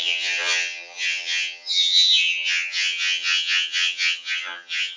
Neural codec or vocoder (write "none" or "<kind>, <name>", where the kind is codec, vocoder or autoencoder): vocoder, HiFi-GAN